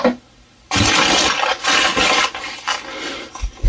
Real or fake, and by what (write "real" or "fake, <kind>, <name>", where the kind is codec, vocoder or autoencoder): real